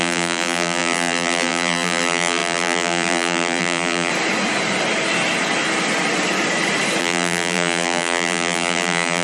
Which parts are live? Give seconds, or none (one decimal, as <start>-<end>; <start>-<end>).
4.1-7.0